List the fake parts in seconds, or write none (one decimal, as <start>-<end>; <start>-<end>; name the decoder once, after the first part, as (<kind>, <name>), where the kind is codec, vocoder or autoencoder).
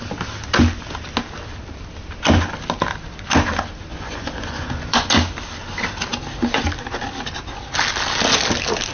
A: 3.9-5.1 (vocoder, Vocos)